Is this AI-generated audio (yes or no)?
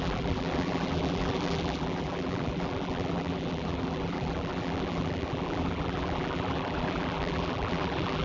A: yes